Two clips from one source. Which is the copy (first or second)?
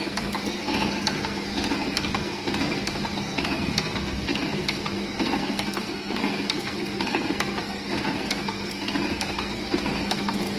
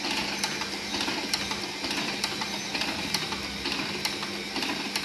first